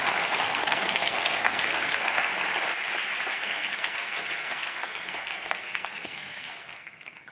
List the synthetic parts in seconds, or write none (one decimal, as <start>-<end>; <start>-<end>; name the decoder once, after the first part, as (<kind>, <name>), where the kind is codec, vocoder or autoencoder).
0.0-2.3 (codec, SNAC); 3.3-7.3